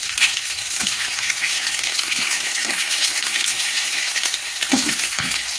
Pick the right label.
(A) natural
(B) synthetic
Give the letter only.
B